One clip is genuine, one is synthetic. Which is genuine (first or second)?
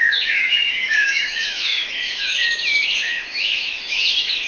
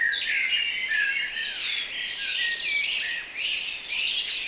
second